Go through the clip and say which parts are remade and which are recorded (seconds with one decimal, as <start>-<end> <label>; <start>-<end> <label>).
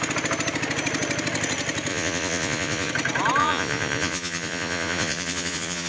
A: 0.0-1.9 recorded; 1.9-2.9 remade; 2.9-3.4 recorded; 3.4-5.9 remade